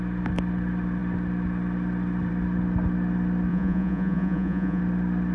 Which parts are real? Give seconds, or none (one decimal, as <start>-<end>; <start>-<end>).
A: 0.0-3.5; 4.8-5.3